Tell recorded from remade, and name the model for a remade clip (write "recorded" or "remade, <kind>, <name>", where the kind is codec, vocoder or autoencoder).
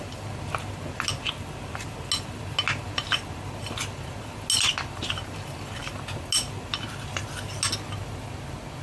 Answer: recorded